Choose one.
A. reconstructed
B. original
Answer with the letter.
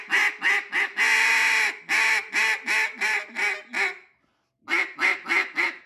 B